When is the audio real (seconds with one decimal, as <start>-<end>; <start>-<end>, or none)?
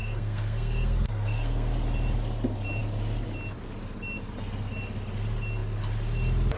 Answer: 1.7-6.6